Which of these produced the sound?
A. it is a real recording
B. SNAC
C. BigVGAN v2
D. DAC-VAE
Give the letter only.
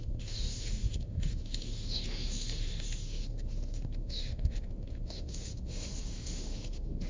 D